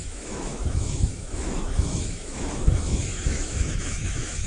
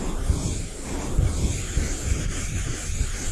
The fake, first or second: first